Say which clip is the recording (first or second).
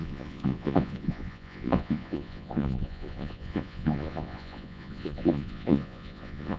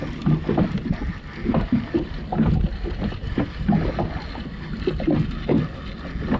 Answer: second